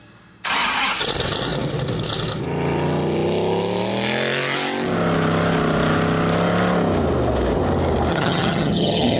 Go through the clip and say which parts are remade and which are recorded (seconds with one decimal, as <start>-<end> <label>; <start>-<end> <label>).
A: 0.0-8.1 recorded; 8.1-9.2 remade